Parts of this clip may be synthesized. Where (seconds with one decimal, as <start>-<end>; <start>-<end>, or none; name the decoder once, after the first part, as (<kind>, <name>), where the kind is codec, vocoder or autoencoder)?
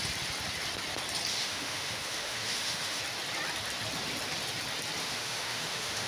1.3-3.0 (autoencoder, DAC-VAE); 5.0-6.1